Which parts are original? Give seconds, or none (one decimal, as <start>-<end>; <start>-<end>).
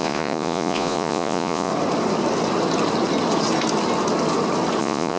1.7-4.8